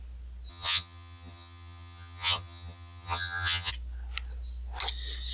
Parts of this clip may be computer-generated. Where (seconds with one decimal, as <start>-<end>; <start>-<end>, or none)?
0.5-3.7